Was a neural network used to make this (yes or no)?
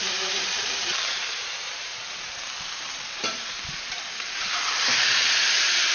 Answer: yes